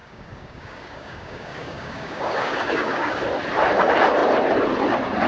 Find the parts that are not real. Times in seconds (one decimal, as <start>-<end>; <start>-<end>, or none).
0.0-3.2